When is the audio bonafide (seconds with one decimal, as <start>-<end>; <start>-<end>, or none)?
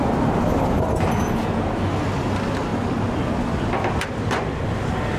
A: 0.0-2.7; 4.7-5.2